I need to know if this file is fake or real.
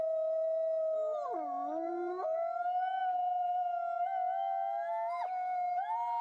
real